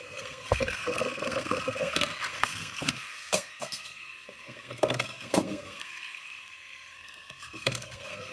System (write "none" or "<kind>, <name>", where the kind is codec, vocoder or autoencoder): codec, SNAC